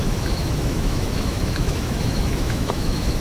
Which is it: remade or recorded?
remade